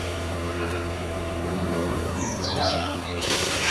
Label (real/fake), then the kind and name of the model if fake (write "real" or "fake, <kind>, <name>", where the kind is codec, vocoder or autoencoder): fake, codec, SNAC